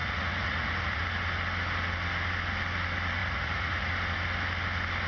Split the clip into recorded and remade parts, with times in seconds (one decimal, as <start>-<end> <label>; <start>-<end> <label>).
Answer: 0.0-1.0 remade; 1.0-3.2 recorded; 3.2-3.9 remade; 3.9-5.1 recorded